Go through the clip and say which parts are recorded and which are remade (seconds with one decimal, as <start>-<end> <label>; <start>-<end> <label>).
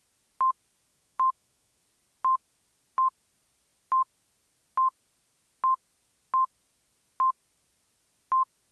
0.0-0.9 recorded; 0.9-1.8 remade; 1.8-8.7 recorded